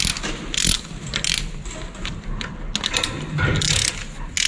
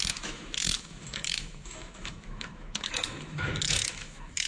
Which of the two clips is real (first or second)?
first